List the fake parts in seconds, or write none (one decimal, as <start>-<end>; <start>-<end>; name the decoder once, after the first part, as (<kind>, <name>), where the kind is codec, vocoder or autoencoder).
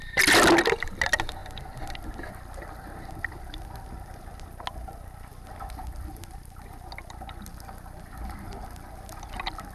none